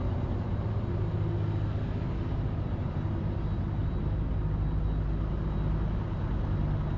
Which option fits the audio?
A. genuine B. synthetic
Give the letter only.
A